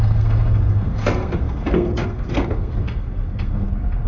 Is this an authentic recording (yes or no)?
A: no